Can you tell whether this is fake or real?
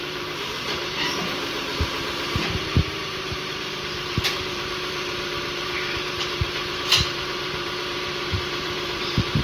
fake